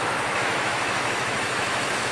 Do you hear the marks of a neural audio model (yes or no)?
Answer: yes